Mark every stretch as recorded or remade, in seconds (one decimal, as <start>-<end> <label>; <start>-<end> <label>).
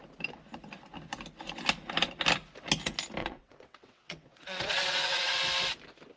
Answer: 0.0-3.2 recorded; 3.2-5.4 remade; 5.4-6.2 recorded